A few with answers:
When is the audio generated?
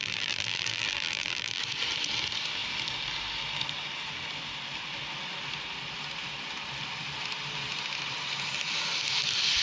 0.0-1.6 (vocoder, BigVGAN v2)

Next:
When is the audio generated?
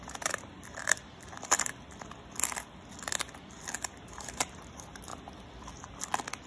0.0-0.5 (vocoder, BigVGAN v2); 3.9-5.1